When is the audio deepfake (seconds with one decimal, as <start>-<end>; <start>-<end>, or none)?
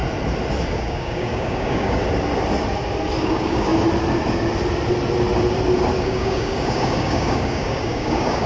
0.7-2.0; 3.2-3.7; 6.0-8.5